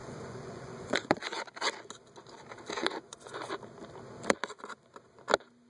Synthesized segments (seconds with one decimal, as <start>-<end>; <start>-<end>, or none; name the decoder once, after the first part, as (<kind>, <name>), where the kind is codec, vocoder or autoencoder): 0.0-1.4 (vocoder, Vocos); 2.8-3.6